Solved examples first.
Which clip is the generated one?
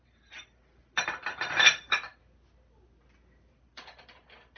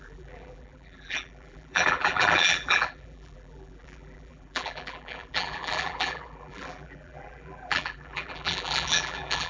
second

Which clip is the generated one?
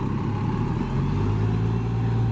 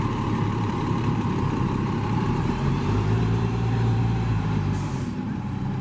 second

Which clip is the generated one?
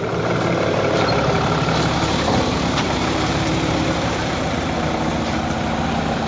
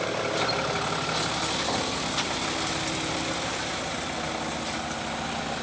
first